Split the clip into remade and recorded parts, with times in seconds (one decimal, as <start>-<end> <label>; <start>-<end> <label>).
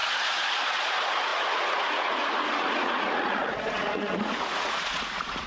0.0-5.5 remade